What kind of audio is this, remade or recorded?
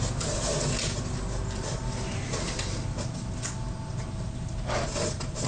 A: recorded